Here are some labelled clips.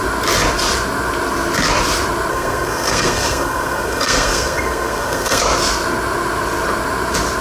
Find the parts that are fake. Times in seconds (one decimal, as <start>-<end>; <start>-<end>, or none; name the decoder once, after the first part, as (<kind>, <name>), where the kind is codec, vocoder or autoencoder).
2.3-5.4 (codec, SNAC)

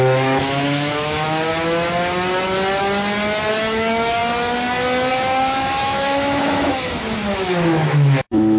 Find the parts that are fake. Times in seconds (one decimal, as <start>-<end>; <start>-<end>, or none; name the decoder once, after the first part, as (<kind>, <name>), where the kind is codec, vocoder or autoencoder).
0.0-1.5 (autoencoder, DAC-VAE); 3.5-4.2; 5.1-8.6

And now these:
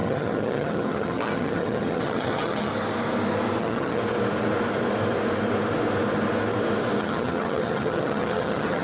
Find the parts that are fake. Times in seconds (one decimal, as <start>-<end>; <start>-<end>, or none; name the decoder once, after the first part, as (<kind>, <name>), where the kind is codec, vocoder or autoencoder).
0.0-2.7 (vocoder, HiFi-GAN); 3.6-4.0; 7.0-8.8